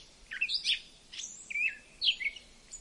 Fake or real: fake